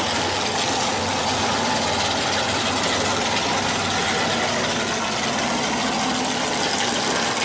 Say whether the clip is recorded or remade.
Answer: recorded